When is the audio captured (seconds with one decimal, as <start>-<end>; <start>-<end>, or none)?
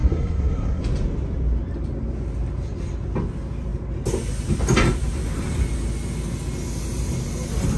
0.8-7.8